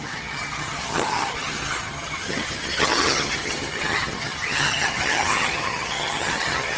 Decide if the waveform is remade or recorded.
remade